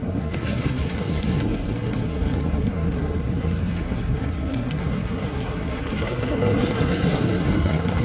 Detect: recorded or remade remade